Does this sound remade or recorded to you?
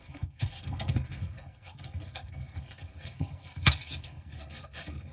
remade